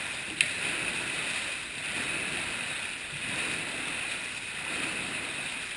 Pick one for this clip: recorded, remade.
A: recorded